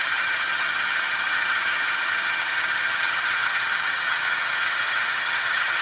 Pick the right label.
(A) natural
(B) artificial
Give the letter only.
B